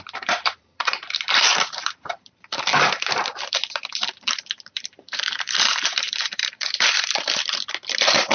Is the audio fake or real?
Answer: fake